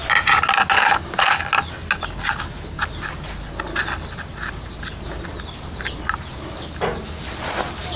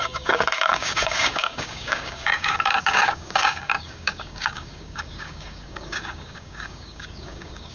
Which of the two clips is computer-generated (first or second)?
second